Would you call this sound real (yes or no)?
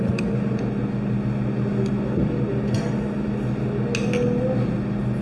yes